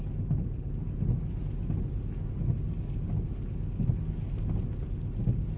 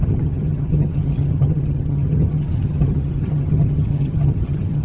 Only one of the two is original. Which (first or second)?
first